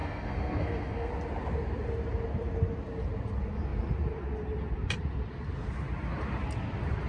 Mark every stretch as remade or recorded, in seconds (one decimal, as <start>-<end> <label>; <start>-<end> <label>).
0.0-1.1 remade; 1.1-7.1 recorded